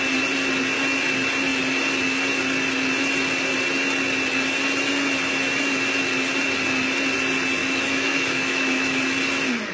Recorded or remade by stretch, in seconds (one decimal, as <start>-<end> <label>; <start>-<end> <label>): 0.0-7.6 recorded; 7.6-9.0 remade; 9.0-9.7 recorded